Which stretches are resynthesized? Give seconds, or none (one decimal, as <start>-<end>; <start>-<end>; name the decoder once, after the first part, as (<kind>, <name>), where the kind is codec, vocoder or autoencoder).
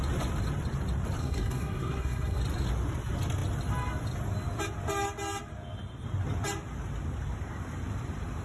1.2-2.4 (codec, SNAC)